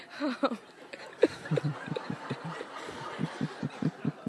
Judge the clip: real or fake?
real